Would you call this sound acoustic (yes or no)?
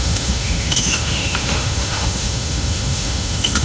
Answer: no